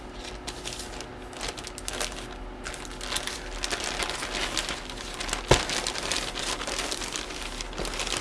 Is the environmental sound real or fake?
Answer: real